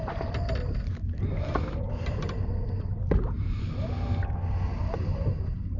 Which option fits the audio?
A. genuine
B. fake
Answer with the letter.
A